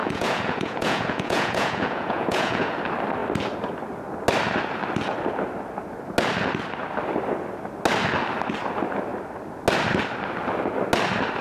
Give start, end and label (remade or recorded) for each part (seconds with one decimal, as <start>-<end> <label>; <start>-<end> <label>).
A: 0.0-2.8 remade; 2.8-11.4 recorded